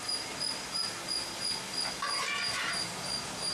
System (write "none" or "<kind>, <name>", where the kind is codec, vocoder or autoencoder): none